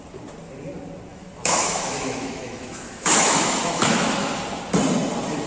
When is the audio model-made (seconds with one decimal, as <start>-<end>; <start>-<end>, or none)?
1.1-4.4